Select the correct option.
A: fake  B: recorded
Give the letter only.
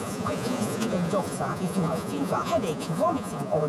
A